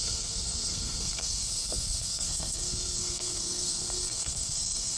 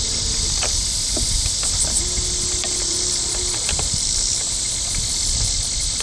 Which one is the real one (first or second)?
second